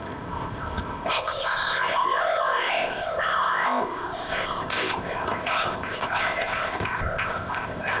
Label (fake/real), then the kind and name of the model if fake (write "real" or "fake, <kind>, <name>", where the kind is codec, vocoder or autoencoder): fake, codec, ZipCodec